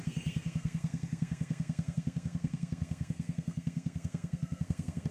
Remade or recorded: remade